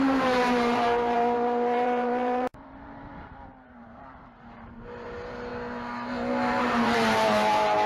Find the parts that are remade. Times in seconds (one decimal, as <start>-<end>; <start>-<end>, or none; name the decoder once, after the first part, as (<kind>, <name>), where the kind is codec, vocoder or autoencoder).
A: 0.0-5.5 (vocoder, BigVGAN v2); 6.6-7.9